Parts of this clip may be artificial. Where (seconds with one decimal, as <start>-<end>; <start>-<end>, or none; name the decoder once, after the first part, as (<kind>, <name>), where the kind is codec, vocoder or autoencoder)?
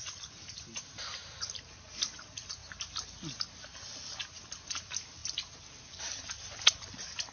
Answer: none